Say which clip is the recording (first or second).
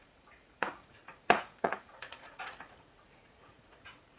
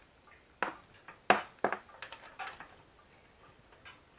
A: second